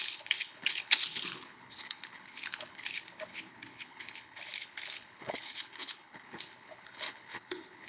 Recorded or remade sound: remade